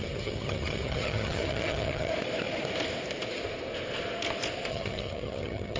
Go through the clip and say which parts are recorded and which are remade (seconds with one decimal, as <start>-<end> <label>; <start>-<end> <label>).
0.0-2.1 remade; 2.1-4.7 recorded; 4.7-5.8 remade